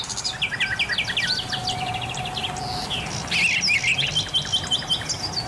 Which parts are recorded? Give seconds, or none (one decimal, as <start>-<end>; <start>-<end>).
0.0-5.5